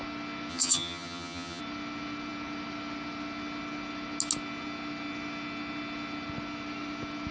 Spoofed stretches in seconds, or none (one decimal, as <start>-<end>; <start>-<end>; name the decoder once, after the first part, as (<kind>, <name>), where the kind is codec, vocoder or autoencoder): 0.5-1.6 (vocoder, HiFi-GAN)